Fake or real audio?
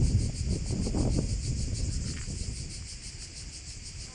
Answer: real